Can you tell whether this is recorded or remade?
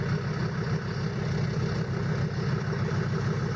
recorded